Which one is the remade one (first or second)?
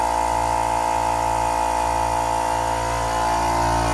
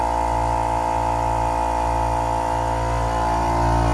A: second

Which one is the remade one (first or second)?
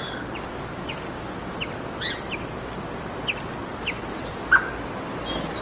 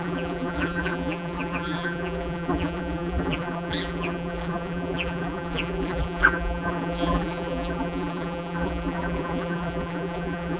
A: second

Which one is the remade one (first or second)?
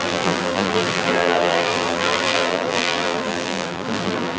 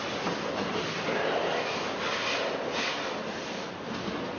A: first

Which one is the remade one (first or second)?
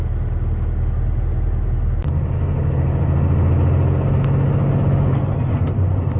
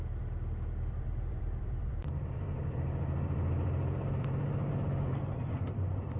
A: second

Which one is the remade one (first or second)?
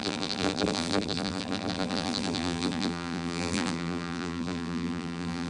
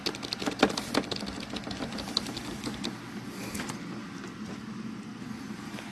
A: first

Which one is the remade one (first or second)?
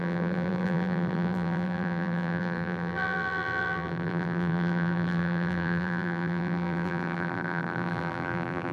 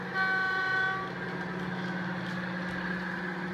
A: first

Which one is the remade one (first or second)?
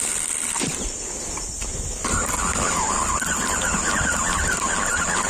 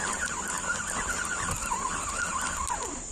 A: second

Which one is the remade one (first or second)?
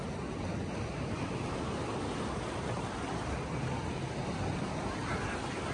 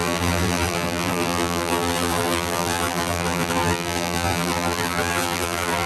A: second